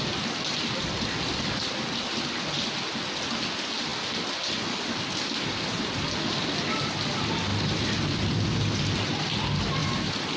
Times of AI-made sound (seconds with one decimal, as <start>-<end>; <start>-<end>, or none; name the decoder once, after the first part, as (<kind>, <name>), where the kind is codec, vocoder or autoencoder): 7.5-8.5 (vocoder, BigVGAN v2); 9.8-10.4